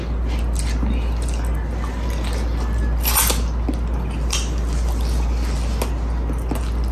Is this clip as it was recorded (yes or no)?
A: yes